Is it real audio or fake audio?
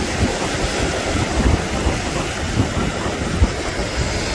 real